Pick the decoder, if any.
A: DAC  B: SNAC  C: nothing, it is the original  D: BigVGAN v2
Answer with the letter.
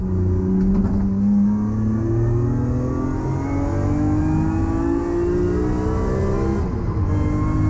C